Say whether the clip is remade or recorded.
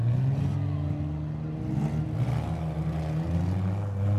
recorded